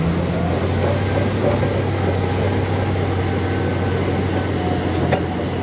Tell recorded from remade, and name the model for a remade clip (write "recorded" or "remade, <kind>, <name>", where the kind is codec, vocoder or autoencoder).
recorded